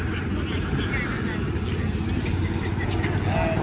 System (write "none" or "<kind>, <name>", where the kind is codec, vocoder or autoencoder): none